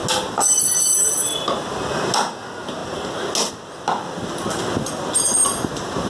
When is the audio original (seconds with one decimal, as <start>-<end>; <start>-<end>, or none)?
0.0-5.4